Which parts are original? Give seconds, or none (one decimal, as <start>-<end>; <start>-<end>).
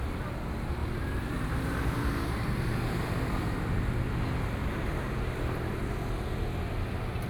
0.0-0.8; 3.7-4.6; 5.8-7.3